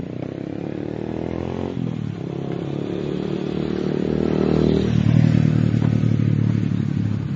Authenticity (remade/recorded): recorded